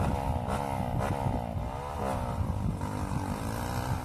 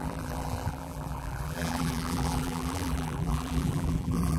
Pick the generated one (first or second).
second